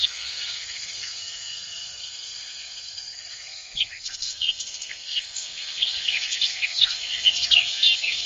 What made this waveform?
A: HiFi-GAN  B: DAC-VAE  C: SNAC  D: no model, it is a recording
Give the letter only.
C